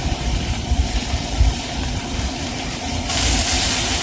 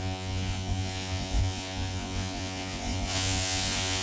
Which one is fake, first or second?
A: second